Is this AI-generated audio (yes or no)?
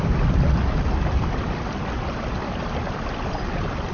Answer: no